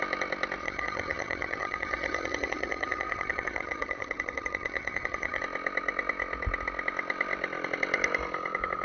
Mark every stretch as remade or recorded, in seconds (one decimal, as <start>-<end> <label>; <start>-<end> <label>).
0.0-0.6 recorded; 0.6-5.4 remade; 5.4-8.8 recorded